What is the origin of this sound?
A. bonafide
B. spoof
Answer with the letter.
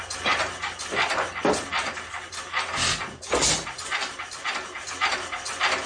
A